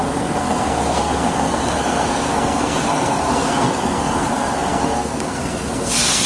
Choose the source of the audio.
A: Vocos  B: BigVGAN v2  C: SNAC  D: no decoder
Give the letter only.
C